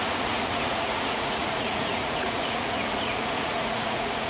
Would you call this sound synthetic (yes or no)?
yes